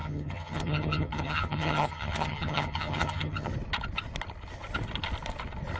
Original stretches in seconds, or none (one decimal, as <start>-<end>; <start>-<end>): 3.5-5.8